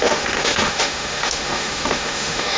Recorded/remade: remade